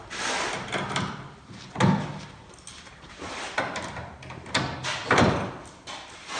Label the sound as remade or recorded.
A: recorded